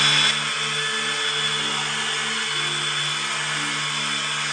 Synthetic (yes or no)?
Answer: no